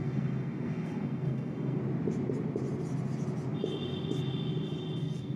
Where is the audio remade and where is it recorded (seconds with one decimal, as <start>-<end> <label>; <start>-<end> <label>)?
0.0-1.8 remade; 1.8-5.0 recorded; 5.0-5.4 remade